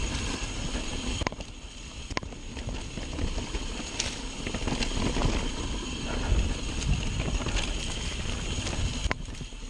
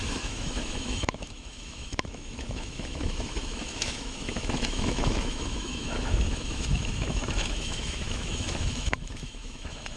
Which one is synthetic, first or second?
second